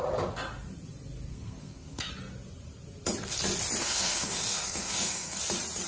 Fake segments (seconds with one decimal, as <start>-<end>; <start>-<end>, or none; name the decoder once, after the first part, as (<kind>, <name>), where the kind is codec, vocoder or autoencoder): 1.3-2.1 (codec, SNAC); 3.8-5.4